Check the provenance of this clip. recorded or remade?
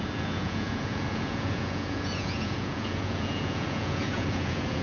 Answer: remade